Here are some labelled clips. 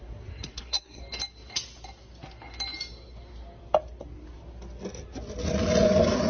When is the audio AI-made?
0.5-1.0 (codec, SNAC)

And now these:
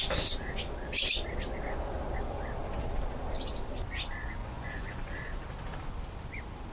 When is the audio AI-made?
4.4-5.1 (vocoder, Vocos)

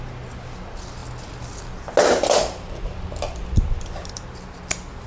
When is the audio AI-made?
none

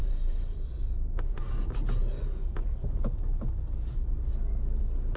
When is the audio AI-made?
0.0-0.8 (vocoder, BigVGAN v2)

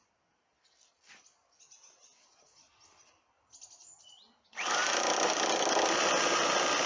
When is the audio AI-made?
none

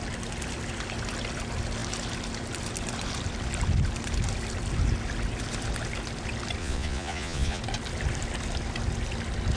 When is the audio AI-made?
6.6-7.6 (vocoder, Vocos)

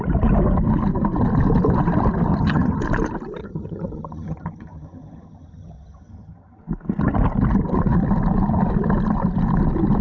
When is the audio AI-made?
2.3-2.8 (vocoder, HiFi-GAN); 3.4-6.6

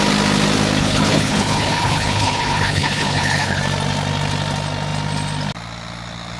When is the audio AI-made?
0.8-3.6 (codec, HILCodec)